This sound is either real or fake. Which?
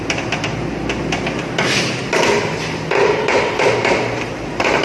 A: real